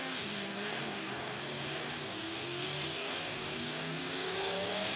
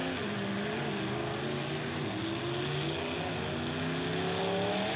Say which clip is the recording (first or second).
second